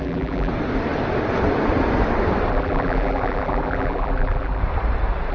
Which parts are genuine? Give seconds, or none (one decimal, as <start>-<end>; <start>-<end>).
0.5-2.5; 4.6-5.3